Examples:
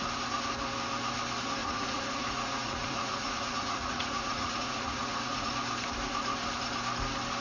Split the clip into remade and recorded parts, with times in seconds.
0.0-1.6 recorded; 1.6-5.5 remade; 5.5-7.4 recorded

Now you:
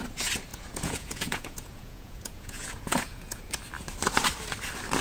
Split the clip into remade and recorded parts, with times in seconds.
0.0-0.5 recorded; 0.5-3.5 remade; 3.5-5.0 recorded